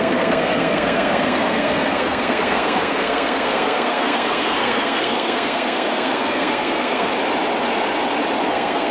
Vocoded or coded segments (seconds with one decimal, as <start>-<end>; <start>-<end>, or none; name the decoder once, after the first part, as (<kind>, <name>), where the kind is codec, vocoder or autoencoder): 0.0-7.1 (codec, SNAC); 8.5-8.9